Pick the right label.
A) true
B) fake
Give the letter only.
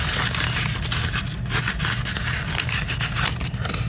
A